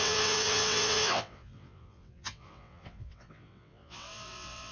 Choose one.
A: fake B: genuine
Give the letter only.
A